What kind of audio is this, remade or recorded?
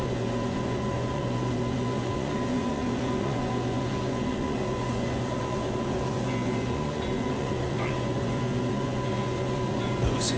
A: remade